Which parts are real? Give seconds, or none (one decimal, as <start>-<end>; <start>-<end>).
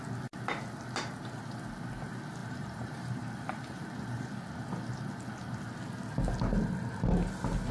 0.0-2.4; 4.3-7.7